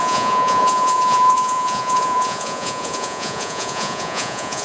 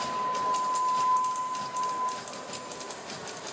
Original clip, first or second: second